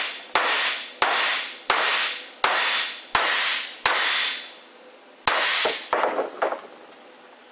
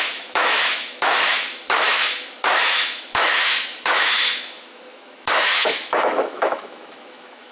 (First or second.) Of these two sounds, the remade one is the second